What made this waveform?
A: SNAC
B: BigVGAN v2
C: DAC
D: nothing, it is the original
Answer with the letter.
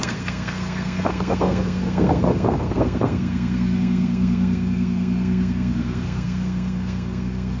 A